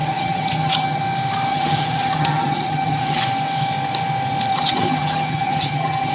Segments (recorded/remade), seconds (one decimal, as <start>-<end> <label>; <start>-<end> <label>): 0.0-1.0 remade; 1.0-1.5 recorded; 1.5-3.2 remade; 3.2-4.5 recorded; 4.5-6.1 remade